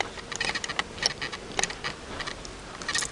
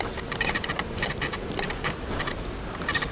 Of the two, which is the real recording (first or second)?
first